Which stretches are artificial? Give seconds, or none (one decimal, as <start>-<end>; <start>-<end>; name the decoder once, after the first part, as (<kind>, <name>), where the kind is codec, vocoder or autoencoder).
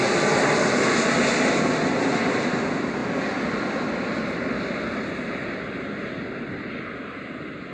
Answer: none